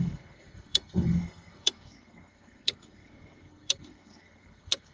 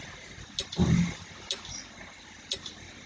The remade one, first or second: first